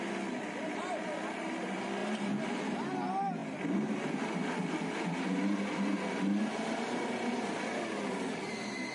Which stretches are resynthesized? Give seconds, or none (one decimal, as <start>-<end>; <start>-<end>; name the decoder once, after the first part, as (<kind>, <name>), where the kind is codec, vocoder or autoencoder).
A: none